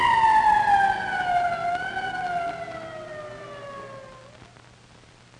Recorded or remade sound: recorded